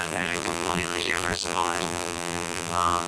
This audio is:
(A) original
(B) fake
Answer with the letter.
B